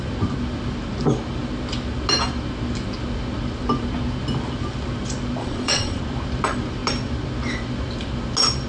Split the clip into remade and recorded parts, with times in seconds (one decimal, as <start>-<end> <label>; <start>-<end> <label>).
0.0-5.4 recorded; 5.4-6.0 remade; 6.0-8.7 recorded